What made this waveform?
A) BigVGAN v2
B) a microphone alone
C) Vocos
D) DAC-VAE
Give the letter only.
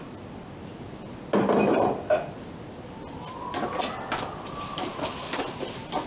B